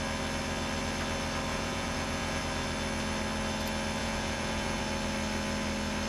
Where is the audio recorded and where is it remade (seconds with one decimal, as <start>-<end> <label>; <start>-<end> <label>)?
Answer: 0.0-1.5 recorded; 1.5-2.4 remade; 2.4-4.0 recorded; 4.0-4.8 remade; 4.8-6.1 recorded